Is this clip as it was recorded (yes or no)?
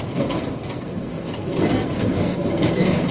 no